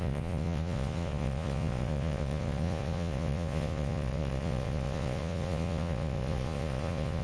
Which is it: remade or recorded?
remade